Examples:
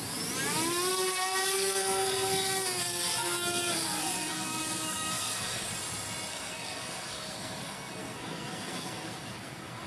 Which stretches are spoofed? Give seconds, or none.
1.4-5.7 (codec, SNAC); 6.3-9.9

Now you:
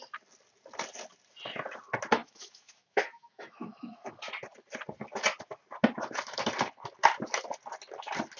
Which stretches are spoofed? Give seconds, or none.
2.2-4.1 (autoencoder, DAC-VAE)

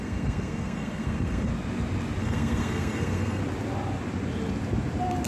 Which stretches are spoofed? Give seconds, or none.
0.0-1.5 (codec, SNAC); 2.2-3.4